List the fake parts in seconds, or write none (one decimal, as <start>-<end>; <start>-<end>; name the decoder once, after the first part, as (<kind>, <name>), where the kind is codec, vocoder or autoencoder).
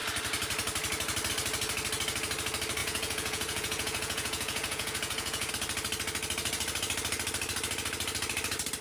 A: 2.8-5.5 (vocoder, Vocos)